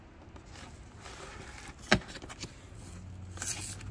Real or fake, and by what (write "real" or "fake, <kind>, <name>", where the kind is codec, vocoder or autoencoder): real